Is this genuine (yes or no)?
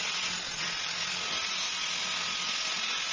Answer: yes